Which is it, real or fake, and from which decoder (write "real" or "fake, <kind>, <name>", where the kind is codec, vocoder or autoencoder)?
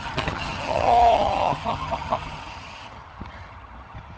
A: fake, vocoder, HiFi-GAN